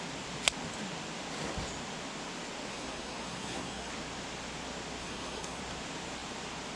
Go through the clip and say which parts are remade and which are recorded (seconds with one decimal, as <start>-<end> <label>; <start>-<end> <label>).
0.0-2.7 recorded; 2.7-3.9 remade; 3.9-5.0 recorded; 5.0-5.6 remade; 5.6-6.8 recorded